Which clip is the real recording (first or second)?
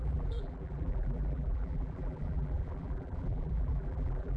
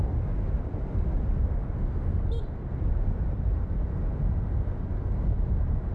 second